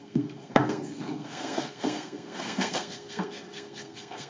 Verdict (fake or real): fake